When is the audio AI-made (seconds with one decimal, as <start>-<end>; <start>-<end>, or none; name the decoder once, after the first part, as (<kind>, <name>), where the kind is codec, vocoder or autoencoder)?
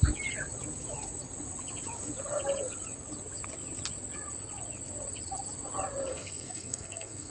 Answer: 6.1-7.3 (codec, SNAC)